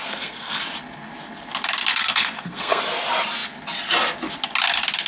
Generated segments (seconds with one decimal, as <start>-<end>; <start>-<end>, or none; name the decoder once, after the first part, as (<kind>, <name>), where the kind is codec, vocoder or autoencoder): 0.0-0.6 (codec, SNAC); 1.9-2.8